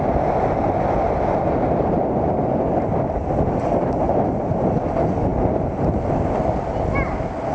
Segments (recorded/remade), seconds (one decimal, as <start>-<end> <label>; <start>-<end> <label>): 0.0-7.5 recorded